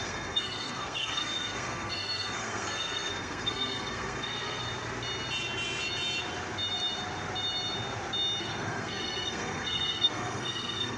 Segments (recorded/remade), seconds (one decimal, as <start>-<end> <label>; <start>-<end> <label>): 0.0-4.6 remade; 4.6-8.4 recorded; 8.4-11.0 remade